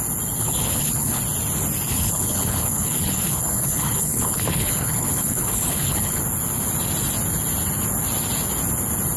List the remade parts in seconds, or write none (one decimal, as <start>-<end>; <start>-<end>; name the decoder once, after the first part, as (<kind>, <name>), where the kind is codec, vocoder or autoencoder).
0.4-1.2 (codec, HILCodec); 1.9-6.2